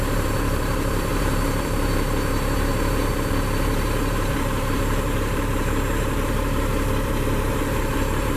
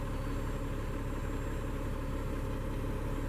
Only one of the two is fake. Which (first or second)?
first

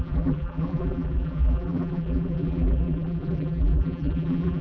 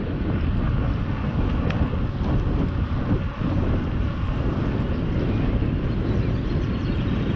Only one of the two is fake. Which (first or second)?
first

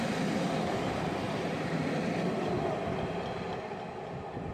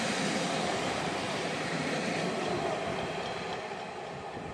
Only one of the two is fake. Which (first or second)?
second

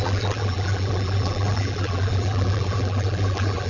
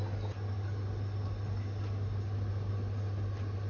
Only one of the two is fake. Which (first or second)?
first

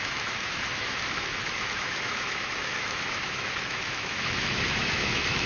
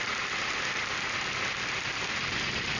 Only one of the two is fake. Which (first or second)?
first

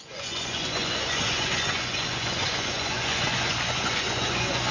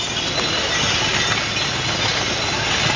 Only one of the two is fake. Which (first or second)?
first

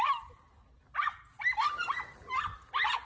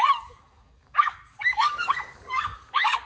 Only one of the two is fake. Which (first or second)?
second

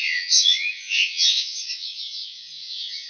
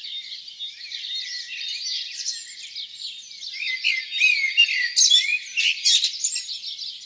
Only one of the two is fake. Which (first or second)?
first